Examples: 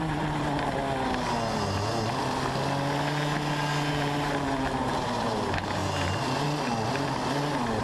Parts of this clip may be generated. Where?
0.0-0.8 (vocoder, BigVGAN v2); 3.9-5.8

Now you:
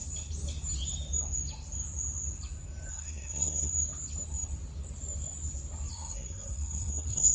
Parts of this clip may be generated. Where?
2.9-3.7 (codec, SNAC); 5.9-7.3

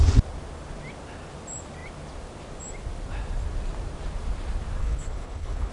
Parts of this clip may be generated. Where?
4.8-5.7 (codec, HILCodec)

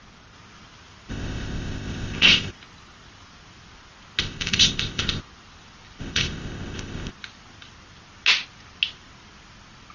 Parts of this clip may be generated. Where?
1.1-2.5 (codec, ZipCodec); 4.2-5.2; 6.0-7.1

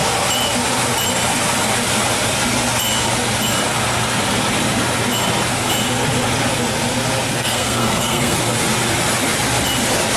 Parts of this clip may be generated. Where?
7.3-8.4 (codec, SNAC)

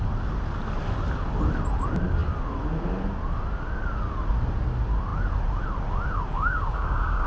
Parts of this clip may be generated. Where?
6.3-7.3 (codec, DAC)